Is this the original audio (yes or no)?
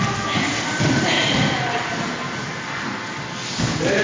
yes